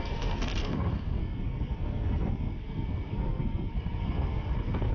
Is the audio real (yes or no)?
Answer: no